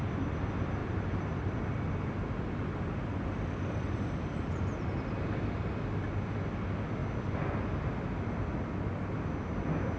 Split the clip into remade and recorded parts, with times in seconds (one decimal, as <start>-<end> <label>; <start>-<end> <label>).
0.0-0.8 recorded; 0.8-5.7 remade; 5.7-10.0 recorded